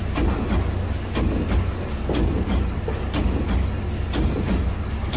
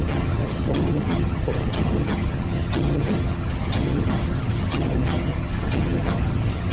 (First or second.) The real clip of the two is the first